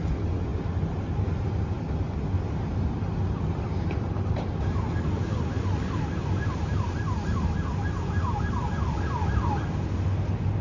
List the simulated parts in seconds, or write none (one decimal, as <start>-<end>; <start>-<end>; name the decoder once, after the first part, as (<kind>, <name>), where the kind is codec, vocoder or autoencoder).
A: none